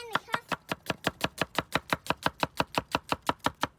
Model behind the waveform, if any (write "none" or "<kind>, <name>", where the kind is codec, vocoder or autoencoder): none